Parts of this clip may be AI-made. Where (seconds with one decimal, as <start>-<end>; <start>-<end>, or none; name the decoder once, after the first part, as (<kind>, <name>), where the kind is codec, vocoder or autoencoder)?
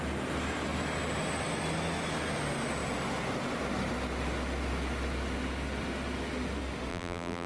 6.9-7.5 (vocoder, BigVGAN v2)